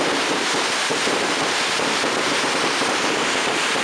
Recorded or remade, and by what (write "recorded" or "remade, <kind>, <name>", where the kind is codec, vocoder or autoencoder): remade, vocoder, BigVGAN v2